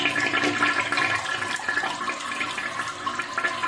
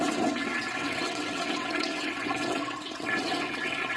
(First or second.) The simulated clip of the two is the second